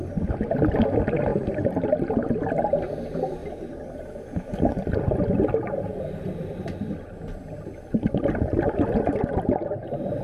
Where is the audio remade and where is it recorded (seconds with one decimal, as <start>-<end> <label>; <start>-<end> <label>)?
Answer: 0.0-10.2 recorded